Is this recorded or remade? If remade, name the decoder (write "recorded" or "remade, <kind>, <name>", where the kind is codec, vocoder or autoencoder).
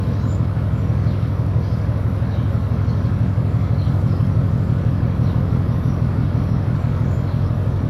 remade, codec, DAC